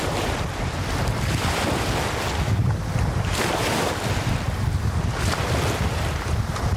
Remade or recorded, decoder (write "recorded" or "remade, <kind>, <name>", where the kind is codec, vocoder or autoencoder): recorded